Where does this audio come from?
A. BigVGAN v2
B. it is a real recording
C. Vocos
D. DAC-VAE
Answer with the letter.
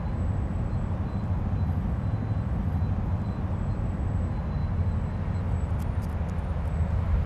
B